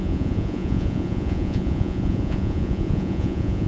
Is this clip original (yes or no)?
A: no